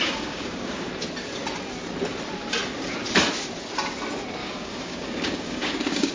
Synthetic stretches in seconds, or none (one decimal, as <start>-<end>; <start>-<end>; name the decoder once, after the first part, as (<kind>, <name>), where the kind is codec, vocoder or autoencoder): 0.0-0.9 (codec, DAC); 4.4-6.1